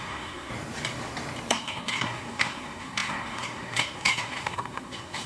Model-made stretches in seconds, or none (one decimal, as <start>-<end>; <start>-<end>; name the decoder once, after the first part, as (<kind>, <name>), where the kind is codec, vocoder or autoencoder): 0.0-0.5 (codec, SNAC); 1.5-5.3